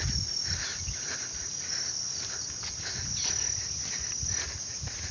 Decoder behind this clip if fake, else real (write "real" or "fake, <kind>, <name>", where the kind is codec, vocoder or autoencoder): real